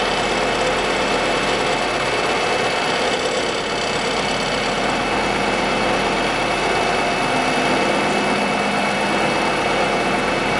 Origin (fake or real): real